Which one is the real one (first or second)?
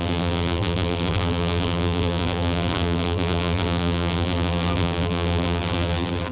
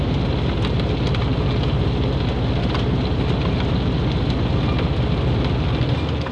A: second